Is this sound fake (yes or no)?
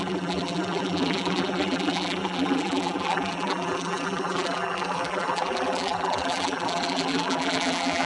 yes